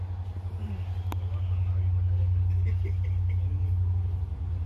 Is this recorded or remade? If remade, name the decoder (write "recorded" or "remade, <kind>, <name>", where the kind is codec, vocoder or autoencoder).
recorded